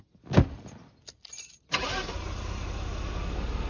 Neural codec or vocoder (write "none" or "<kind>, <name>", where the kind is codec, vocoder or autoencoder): none